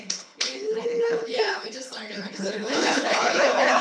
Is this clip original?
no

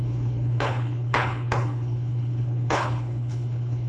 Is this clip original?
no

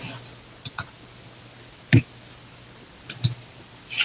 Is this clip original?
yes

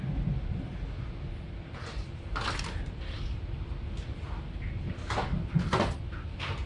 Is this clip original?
yes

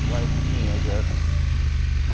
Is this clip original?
yes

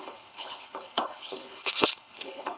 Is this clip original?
no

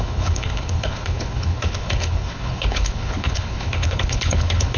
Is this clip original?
no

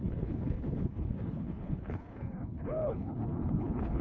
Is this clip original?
no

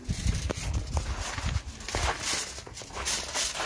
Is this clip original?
yes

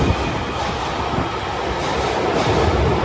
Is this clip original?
yes